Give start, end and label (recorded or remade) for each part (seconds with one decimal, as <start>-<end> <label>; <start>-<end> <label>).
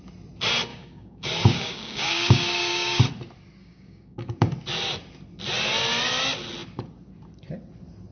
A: 0.0-0.7 recorded; 0.7-3.0 remade; 3.0-3.6 recorded; 3.6-4.5 remade; 4.5-8.1 recorded